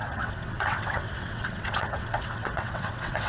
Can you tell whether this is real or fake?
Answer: fake